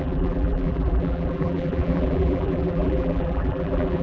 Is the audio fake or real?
fake